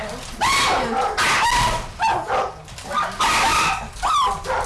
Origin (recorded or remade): recorded